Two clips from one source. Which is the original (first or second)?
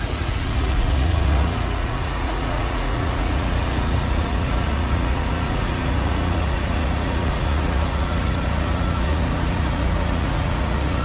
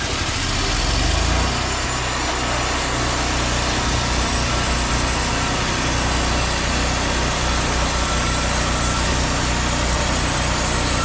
second